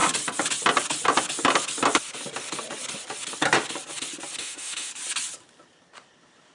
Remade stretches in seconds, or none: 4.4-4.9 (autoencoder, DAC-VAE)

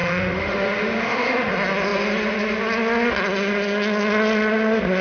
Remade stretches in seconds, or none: 0.0-1.5 (autoencoder, DAC-VAE)

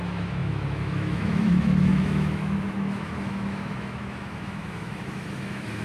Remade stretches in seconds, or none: 0.0-5.8 (autoencoder, DAC-VAE)

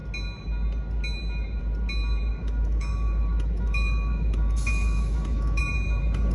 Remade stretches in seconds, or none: 2.3-5.6 (autoencoder, DAC-VAE)